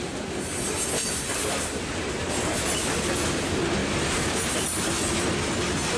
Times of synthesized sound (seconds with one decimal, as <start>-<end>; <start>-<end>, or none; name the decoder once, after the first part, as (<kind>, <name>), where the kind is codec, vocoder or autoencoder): none